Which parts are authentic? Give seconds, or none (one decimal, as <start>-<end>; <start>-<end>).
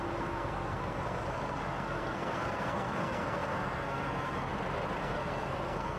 4.5-5.0